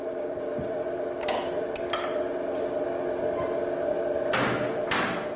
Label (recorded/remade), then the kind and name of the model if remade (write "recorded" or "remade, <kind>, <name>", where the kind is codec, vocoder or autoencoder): recorded